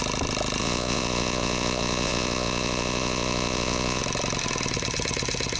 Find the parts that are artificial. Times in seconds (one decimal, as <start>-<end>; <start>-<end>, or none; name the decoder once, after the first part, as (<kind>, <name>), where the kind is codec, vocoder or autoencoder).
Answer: 0.6-4.0 (vocoder, Vocos)